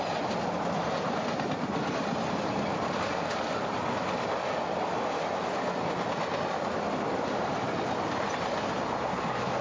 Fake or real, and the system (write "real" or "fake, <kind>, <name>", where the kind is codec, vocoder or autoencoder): real